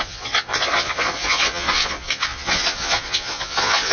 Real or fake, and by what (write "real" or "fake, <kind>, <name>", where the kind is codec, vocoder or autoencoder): fake, vocoder, Vocos